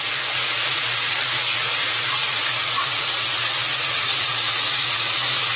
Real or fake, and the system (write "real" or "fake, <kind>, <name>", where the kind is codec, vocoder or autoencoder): fake, vocoder, Vocos